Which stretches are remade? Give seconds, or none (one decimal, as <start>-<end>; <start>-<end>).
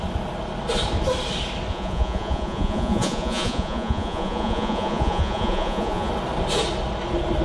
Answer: 1.7-6.1